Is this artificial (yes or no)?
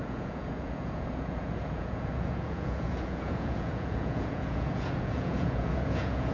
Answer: yes